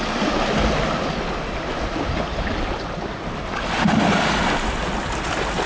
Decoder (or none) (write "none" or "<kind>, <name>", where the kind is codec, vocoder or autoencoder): none